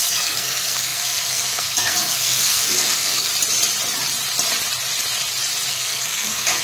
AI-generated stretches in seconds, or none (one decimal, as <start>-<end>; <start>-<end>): 0.0-3.3; 5.7-6.6